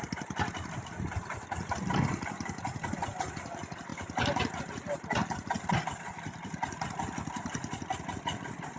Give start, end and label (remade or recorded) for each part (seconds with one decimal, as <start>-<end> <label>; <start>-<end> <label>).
0.0-8.8 recorded